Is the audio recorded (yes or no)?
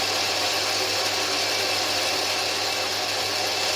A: yes